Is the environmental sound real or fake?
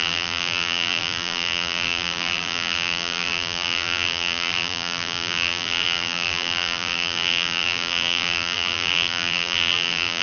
fake